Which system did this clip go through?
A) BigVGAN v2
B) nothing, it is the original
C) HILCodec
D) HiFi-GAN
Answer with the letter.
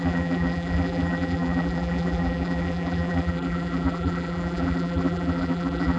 A